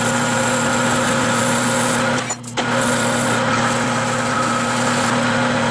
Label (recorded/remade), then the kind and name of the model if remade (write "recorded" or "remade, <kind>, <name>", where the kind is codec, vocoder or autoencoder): recorded